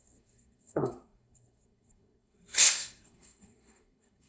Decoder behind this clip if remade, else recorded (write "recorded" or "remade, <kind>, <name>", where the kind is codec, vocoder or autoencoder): remade, codec, SNAC